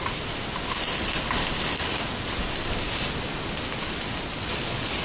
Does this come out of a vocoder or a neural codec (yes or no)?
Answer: no